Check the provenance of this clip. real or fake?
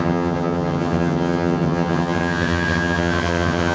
fake